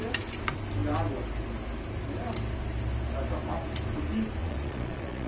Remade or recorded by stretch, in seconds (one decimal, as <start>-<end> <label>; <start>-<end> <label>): 0.0-4.4 recorded; 4.4-5.3 remade